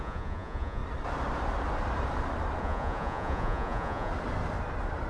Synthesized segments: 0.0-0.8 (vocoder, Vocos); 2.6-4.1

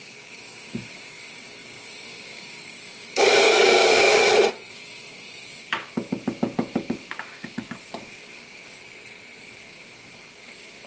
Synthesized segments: 0.0-4.2 (codec, DAC); 4.7-8.8; 9.4-10.9

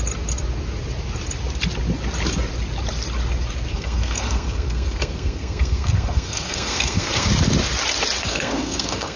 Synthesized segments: 3.7-7.3 (codec, SNAC); 8.2-9.2

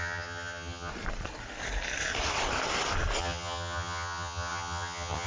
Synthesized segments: 0.0-0.9 (vocoder, HiFi-GAN); 3.2-5.3

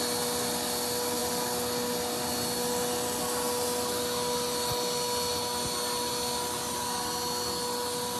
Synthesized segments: none

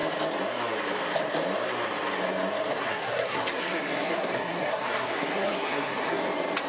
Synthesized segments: 2.7-6.2 (codec, SNAC)